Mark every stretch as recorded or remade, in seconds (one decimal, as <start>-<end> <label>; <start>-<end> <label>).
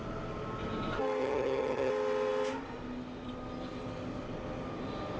0.0-1.2 recorded; 1.2-1.9 remade; 1.9-5.2 recorded